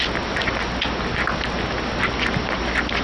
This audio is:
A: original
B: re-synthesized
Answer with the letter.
A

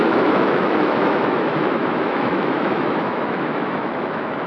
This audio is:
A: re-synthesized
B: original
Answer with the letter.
A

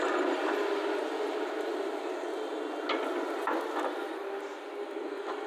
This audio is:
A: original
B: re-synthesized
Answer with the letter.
A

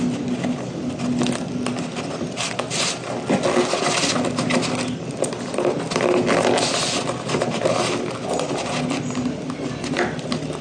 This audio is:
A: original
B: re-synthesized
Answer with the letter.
A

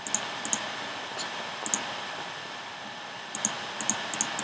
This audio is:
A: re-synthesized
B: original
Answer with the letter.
B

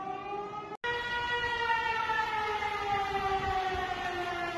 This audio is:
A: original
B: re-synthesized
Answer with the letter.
A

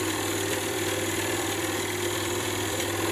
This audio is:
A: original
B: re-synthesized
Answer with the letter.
B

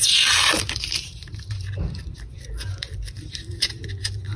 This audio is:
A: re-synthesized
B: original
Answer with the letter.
A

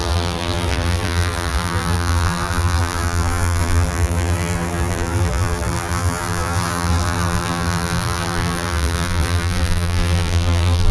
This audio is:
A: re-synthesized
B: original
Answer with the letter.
A